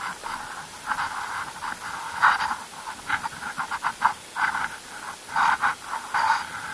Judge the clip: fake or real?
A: real